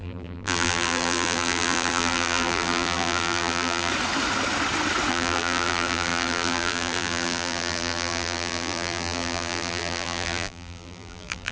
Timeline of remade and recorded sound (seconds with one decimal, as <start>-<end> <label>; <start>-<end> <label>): 0.0-3.9 remade; 3.9-5.1 recorded; 5.1-11.5 remade